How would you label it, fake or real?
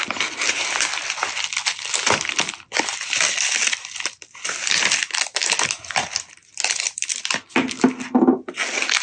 real